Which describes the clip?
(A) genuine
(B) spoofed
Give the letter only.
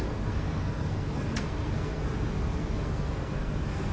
B